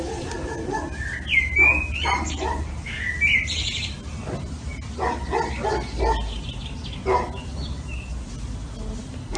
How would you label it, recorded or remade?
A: recorded